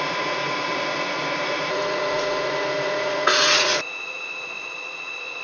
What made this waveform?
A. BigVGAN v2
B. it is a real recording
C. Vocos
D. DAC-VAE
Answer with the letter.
C